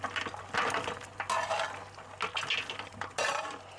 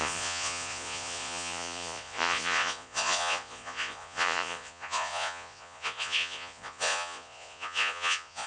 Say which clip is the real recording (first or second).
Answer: first